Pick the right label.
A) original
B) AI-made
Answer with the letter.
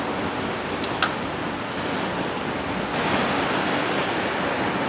A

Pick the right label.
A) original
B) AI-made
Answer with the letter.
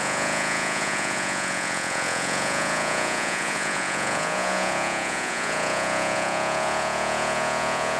B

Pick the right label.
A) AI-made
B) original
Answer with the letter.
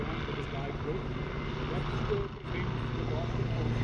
B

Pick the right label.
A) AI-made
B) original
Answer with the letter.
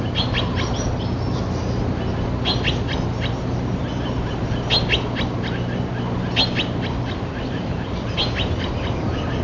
B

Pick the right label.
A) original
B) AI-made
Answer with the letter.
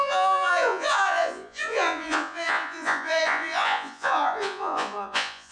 B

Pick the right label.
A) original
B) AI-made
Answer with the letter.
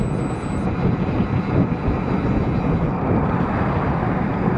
A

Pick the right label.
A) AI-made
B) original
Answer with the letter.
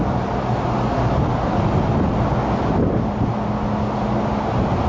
B